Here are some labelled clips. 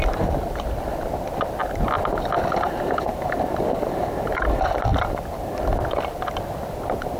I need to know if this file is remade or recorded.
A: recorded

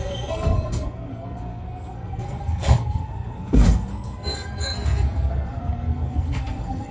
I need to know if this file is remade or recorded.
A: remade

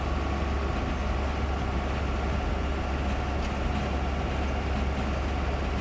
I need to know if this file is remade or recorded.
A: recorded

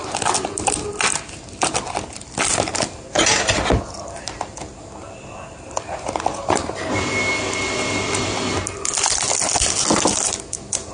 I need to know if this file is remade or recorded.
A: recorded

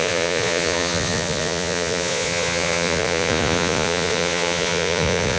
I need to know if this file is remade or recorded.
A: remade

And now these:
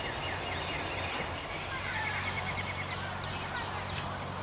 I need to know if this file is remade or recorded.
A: recorded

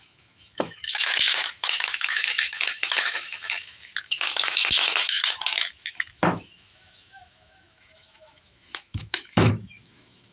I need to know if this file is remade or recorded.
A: remade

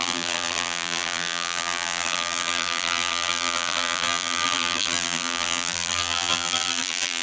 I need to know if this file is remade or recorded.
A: remade